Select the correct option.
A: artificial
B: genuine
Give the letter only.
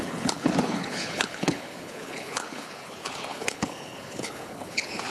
A